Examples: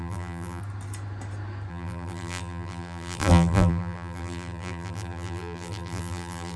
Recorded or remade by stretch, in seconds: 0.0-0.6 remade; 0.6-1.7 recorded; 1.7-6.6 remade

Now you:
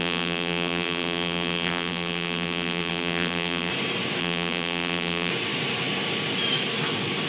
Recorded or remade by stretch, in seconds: 0.0-3.7 remade; 3.7-4.2 recorded; 4.2-5.3 remade; 5.3-7.3 recorded

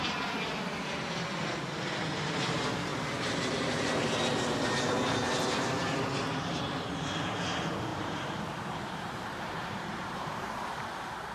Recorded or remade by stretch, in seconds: 0.0-7.9 recorded; 7.9-10.6 remade; 10.6-11.3 recorded

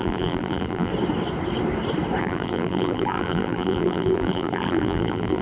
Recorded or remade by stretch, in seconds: 0.0-0.9 remade; 0.9-2.2 recorded; 2.2-5.4 remade